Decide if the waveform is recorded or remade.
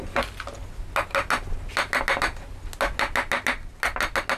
recorded